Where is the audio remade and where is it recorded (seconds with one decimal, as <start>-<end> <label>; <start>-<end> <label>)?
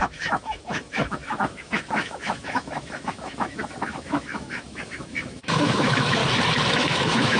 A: 0.0-6.2 remade; 6.2-6.7 recorded; 6.7-7.4 remade